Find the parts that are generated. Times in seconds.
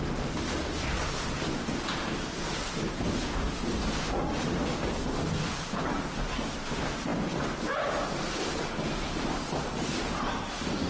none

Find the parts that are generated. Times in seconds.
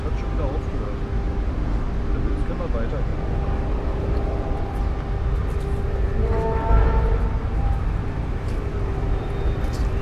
3.1-4.6 (vocoder, BigVGAN v2); 5.4-10.0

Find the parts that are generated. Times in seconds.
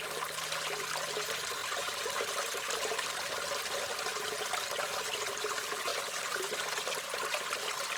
1.6-3.0 (vocoder, BigVGAN v2)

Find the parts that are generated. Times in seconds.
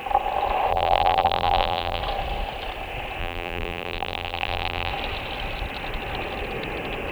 0.7-2.0 (vocoder, BigVGAN v2); 3.2-4.9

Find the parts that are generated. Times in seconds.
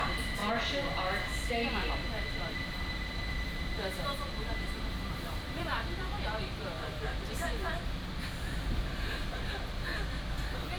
0.0-0.4 (vocoder, BigVGAN v2); 2.5-9.9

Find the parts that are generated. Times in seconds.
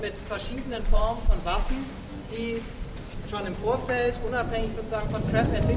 0.0-1.0 (vocoder, BigVGAN v2)